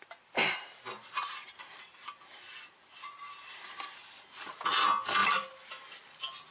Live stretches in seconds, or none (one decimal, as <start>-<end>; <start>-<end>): 0.0-0.4; 4.3-5.2; 6.1-6.5